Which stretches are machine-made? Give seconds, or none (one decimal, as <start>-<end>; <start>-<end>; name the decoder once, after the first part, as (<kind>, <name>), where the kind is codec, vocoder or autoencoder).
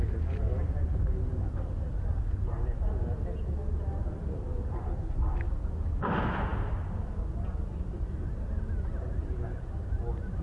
none